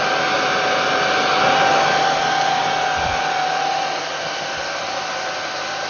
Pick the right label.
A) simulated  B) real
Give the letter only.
B